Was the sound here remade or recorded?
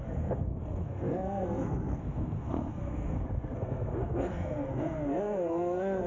remade